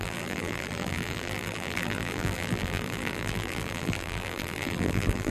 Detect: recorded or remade remade